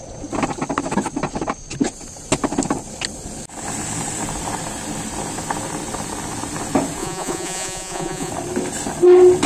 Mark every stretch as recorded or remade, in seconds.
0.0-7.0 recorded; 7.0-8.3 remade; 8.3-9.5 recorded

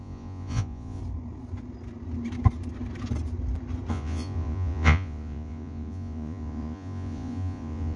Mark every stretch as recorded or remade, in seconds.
0.0-1.0 remade; 1.0-3.9 recorded; 3.9-8.0 remade

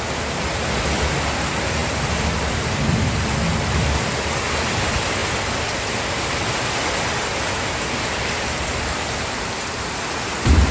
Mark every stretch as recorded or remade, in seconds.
0.0-10.7 recorded